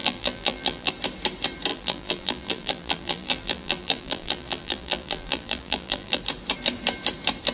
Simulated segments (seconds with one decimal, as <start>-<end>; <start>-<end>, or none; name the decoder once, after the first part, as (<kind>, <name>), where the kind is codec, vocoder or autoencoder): 0.0-0.9 (vocoder, BigVGAN v2); 1.7-6.2